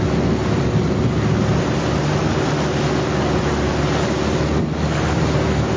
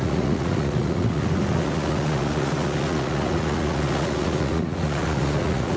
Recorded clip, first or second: first